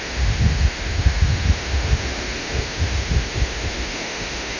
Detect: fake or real fake